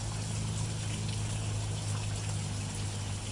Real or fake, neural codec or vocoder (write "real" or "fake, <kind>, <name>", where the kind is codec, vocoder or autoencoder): real